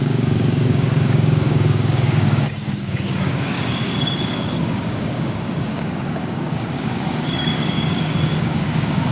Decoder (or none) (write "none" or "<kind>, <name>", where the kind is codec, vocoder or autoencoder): codec, DAC